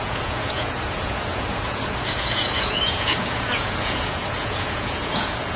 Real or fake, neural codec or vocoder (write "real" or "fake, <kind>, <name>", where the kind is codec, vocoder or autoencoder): fake, vocoder, Vocos